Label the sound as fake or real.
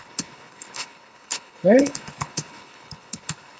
fake